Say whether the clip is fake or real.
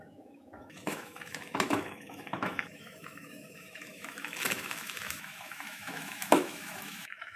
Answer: fake